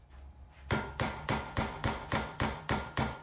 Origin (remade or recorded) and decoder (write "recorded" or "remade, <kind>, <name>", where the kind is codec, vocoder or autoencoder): remade, vocoder, BigVGAN v2